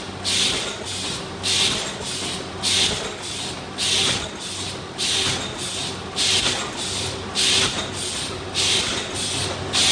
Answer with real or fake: real